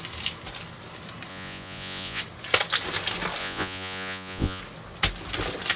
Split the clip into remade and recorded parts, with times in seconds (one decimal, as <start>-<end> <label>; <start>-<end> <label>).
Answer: 0.0-1.3 recorded; 1.3-2.2 remade; 2.2-3.4 recorded; 3.4-4.6 remade; 4.6-5.8 recorded